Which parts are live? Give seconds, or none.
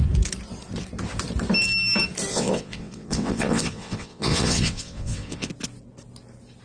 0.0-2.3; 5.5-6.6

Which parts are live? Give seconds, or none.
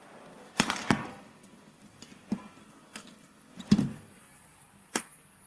none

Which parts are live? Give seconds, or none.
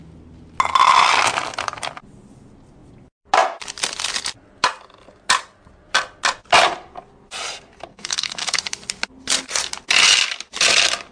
0.0-7.9; 8.6-11.1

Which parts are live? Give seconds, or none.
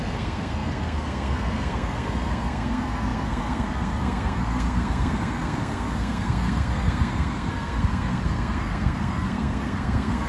none